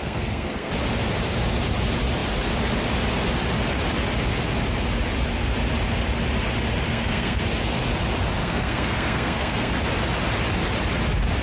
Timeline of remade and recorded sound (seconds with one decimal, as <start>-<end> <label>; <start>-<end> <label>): 0.0-0.7 remade; 0.7-6.9 recorded; 6.9-7.4 remade; 7.4-8.4 recorded; 8.4-9.7 remade; 9.7-11.4 recorded